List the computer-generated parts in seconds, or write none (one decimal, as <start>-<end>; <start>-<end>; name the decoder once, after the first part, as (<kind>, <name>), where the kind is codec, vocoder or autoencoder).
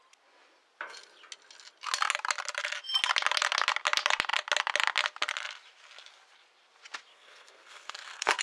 7.1-8.4 (codec, SNAC)